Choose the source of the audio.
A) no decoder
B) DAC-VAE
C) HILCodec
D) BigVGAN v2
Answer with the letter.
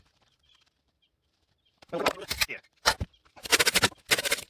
D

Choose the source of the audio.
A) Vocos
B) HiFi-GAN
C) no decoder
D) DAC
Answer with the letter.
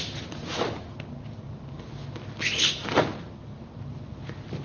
C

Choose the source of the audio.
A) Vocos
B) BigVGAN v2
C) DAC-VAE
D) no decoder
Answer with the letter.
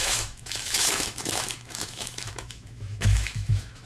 C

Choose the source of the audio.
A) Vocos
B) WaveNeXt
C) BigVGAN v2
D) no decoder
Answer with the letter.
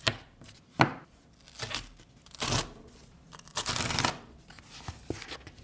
D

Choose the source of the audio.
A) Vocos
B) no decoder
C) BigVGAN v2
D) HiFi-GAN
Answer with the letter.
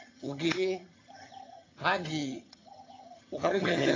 D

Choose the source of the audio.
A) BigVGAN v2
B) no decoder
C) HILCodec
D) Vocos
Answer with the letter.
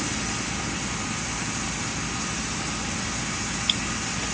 B